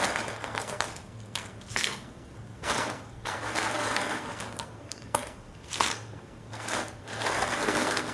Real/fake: fake